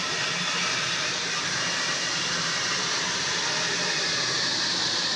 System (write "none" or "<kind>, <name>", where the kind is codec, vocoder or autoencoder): vocoder, BigVGAN v2